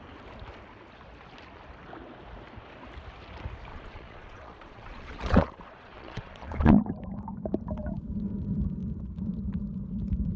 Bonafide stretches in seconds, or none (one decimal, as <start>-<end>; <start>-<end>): 0.0-3.7; 6.8-10.4